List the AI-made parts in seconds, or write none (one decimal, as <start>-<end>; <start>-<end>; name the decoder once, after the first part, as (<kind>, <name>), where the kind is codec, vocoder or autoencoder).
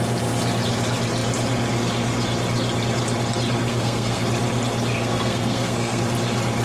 3.7-4.2 (codec, SNAC); 4.9-6.0